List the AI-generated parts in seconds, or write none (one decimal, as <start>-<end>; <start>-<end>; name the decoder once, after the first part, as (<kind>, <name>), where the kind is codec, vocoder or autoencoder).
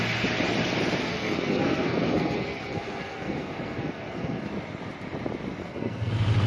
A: 1.1-4.5 (codec, SNAC); 5.6-6.1